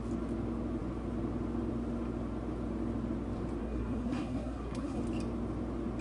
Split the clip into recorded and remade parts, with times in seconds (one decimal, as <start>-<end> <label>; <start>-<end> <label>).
0.0-3.6 recorded; 3.6-5.0 remade; 5.0-6.0 recorded